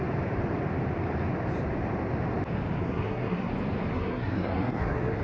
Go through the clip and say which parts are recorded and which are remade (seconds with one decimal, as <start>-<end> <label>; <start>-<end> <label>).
0.0-2.8 recorded; 2.8-3.5 remade; 3.5-3.9 recorded; 3.9-5.2 remade